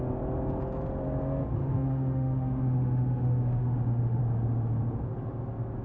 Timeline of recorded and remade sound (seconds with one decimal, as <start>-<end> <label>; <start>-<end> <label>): 0.0-1.6 recorded; 1.6-4.2 remade; 4.2-5.8 recorded